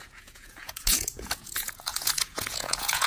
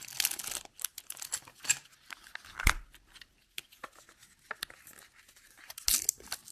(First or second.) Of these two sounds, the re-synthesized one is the first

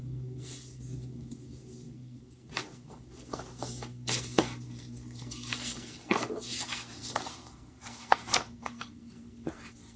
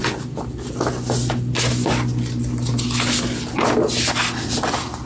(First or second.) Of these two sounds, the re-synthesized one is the first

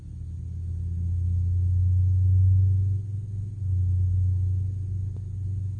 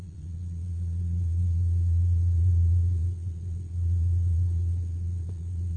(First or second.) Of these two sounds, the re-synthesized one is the second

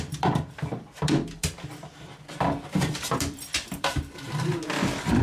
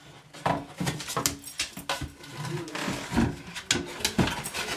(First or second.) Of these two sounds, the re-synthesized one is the first